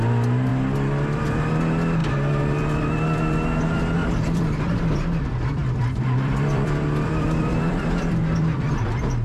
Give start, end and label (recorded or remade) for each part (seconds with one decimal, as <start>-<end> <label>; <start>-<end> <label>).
0.0-4.0 recorded; 4.0-4.8 remade; 4.8-5.6 recorded; 5.6-8.7 remade; 8.7-9.2 recorded